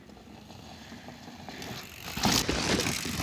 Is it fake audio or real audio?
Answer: real